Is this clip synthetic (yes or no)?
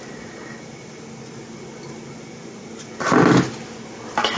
no